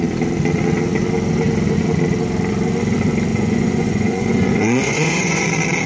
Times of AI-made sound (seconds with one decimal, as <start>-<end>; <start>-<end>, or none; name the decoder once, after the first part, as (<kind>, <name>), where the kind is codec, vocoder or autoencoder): 3.3-5.4 (vocoder, Vocos)